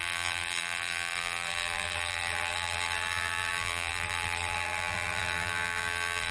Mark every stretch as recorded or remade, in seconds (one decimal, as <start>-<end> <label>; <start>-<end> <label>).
0.0-6.3 remade